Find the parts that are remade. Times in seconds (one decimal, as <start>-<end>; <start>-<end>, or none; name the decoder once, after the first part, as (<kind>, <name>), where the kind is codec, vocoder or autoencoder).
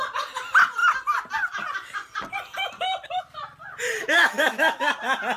4.0-4.9 (autoencoder, DAC-VAE)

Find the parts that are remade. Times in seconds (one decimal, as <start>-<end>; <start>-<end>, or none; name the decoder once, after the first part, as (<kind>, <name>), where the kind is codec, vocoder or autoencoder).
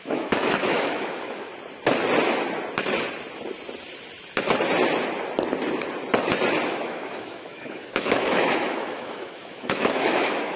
0.0-1.5 (autoencoder, DAC-VAE); 6.7-10.6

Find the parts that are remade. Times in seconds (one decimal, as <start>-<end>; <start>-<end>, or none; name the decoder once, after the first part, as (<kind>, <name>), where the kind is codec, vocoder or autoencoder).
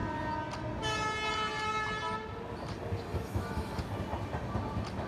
3.1-3.8 (autoencoder, DAC-VAE)